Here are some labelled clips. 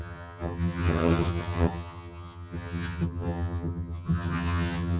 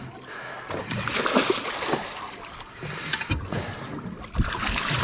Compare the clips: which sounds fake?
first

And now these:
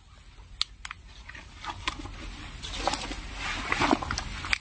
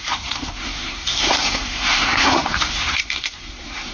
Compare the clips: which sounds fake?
second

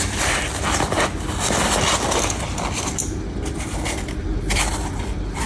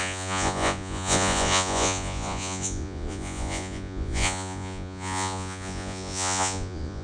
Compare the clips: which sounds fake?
second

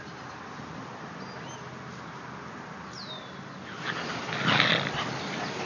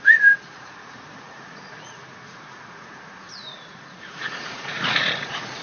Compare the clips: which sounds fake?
second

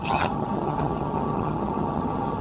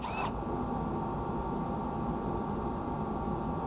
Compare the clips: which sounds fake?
first